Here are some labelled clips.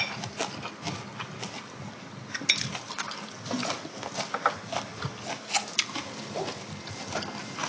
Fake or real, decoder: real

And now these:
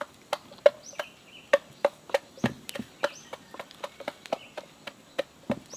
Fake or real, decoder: real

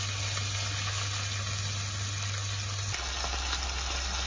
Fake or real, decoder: real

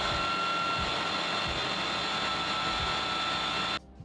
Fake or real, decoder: real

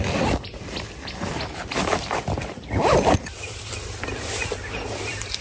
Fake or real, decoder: fake, vocoder, BigVGAN v2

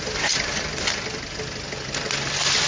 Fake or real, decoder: real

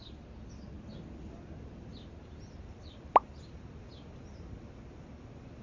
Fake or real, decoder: real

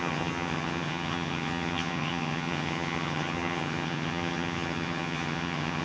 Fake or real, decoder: fake, vocoder, HiFi-GAN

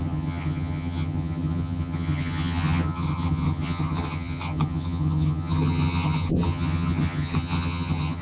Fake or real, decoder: fake, vocoder, HiFi-GAN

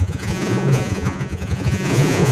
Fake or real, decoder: fake, vocoder, Vocos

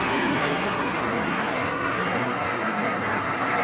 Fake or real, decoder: fake, codec, SNAC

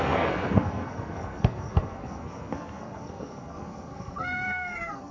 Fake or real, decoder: fake, codec, SNAC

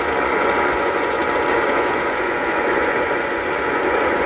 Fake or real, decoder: fake, vocoder, Vocos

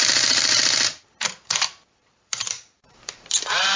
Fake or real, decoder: fake, vocoder, BigVGAN v2